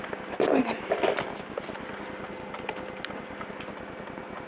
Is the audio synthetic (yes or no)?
no